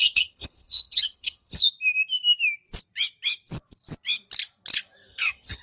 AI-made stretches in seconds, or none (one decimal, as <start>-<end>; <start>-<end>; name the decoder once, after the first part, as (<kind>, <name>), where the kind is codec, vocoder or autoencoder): 0.0-1.7 (vocoder, HiFi-GAN); 5.1-5.6